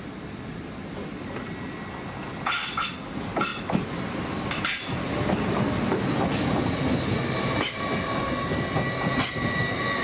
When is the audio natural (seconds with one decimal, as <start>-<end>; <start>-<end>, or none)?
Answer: 0.0-10.0